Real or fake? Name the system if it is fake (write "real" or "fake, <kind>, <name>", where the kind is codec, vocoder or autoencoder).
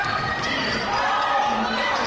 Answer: fake, vocoder, BigVGAN v2